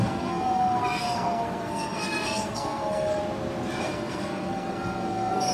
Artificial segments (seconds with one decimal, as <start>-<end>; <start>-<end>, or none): 0.0-3.2; 3.8-5.5